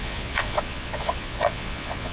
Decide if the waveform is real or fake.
fake